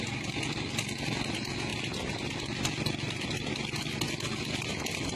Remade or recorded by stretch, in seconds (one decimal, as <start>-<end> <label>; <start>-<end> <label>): 0.0-5.2 recorded